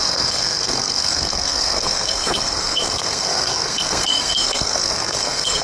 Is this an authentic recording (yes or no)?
no